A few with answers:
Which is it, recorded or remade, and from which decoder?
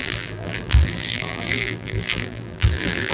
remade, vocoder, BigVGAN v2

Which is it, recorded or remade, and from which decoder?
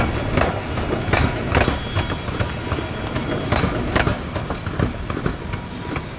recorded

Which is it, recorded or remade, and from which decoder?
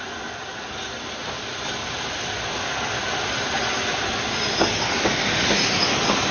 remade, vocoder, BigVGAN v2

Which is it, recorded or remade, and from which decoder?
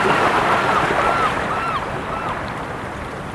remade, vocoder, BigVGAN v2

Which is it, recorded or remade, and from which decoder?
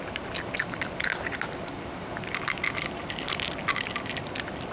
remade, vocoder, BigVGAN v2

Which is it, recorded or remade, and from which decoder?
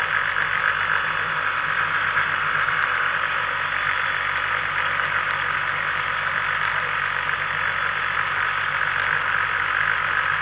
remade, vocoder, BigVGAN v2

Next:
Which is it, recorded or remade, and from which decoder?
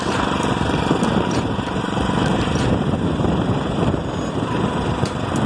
remade, vocoder, BigVGAN v2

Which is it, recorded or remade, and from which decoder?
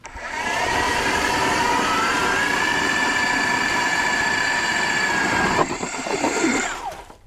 remade, vocoder, BigVGAN v2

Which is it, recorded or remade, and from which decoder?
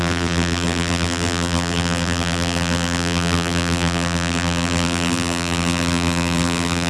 remade, vocoder, BigVGAN v2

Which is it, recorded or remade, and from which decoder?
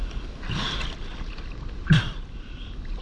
recorded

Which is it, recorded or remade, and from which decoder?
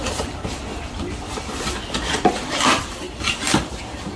remade, vocoder, BigVGAN v2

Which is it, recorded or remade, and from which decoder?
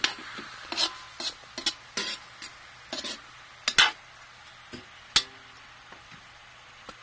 recorded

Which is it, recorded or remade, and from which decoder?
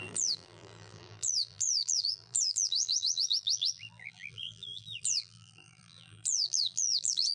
remade, vocoder, BigVGAN v2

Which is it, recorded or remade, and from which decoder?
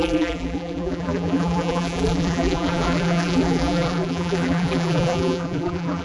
remade, vocoder, BigVGAN v2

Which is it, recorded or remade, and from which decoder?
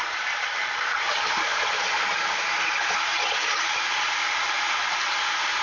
recorded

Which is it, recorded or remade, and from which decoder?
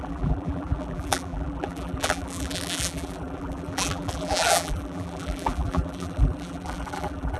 remade, vocoder, BigVGAN v2